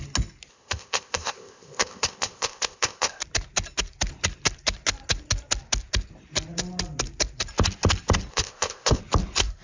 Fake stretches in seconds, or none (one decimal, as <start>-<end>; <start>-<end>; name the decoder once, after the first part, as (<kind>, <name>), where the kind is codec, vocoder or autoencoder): 0.5-3.2 (codec, ZipCodec); 8.3-9.0